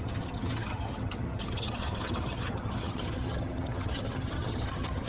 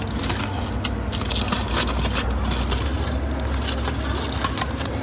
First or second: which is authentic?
second